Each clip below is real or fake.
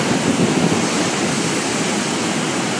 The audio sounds real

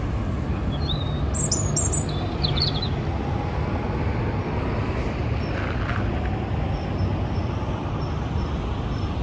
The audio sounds real